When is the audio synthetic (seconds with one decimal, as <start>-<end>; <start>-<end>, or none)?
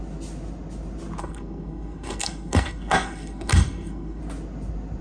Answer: 1.2-4.2